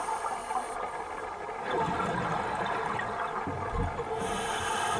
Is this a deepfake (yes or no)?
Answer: no